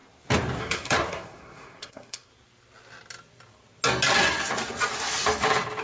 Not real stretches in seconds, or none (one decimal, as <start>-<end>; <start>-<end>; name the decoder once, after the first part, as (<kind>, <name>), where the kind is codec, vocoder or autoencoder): 0.6-2.3 (codec, SNAC)